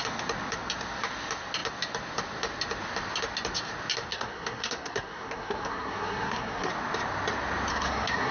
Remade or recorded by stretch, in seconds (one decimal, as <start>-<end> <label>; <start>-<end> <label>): 0.0-4.1 recorded; 4.1-6.7 remade; 6.7-7.7 recorded; 7.7-8.3 remade